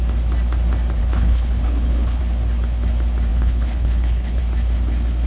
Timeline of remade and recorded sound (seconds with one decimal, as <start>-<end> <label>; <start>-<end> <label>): 0.0-1.0 recorded; 1.0-2.2 remade; 2.2-3.3 recorded; 3.3-4.4 remade; 4.4-5.3 recorded